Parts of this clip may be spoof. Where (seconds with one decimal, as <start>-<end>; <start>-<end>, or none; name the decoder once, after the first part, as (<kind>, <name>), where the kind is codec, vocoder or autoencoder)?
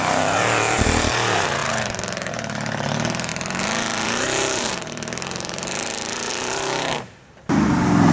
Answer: 0.0-8.1 (vocoder, BigVGAN v2)